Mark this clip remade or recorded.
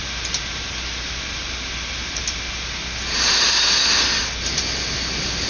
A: recorded